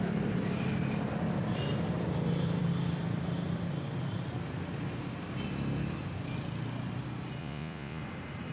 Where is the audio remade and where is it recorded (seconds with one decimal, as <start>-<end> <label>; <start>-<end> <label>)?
0.0-7.4 recorded; 7.4-8.0 remade; 8.0-8.5 recorded